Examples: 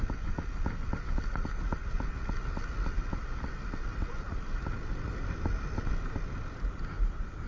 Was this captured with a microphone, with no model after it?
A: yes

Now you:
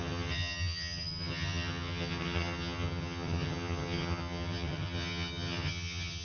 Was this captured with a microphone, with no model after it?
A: no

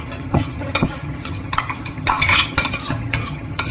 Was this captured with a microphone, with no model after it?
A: no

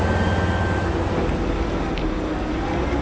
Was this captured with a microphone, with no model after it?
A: yes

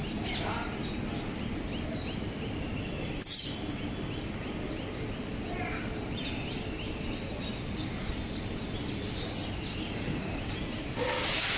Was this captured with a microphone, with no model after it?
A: yes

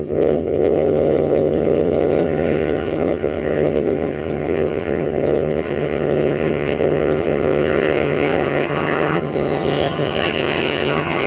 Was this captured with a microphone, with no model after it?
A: no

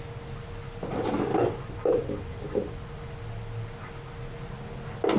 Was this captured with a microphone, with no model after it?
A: yes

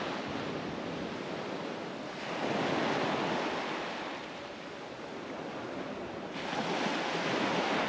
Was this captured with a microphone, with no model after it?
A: yes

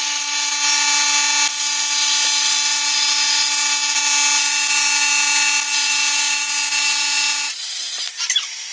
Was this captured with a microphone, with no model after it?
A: yes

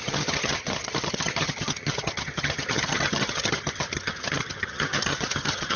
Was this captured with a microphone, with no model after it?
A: no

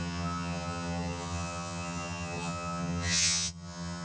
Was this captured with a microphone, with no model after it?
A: no